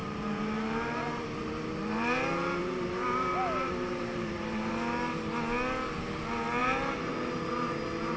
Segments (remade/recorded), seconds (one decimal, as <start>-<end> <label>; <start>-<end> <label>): 0.0-4.7 remade; 4.7-6.6 recorded; 6.6-8.2 remade